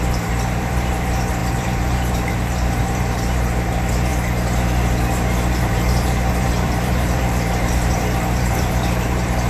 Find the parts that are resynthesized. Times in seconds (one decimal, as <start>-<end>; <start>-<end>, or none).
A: 0.0-4.1; 5.6-9.5

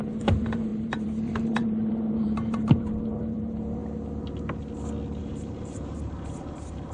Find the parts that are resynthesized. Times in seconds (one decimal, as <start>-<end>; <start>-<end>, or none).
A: 0.0-3.8; 5.2-6.9

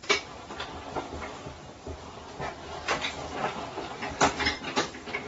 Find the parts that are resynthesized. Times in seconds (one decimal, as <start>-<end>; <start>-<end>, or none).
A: none

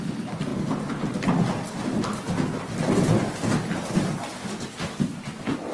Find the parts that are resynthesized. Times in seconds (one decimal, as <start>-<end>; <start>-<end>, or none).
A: none

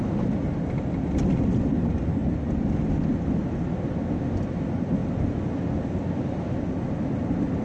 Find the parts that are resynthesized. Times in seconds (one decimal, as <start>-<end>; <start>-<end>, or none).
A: 5.0-5.5

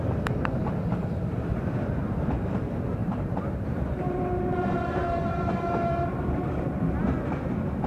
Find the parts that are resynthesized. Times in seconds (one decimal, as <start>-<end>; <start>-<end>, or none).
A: 0.0-0.8; 1.5-7.0

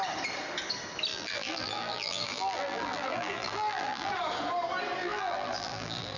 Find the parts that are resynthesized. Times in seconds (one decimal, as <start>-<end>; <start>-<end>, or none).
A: 1.1-4.1; 5.0-6.2

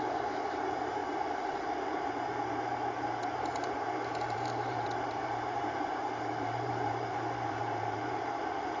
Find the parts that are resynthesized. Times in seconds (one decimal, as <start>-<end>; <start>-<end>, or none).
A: 0.0-8.8